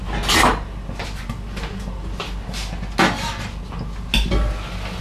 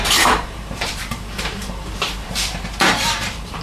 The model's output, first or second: second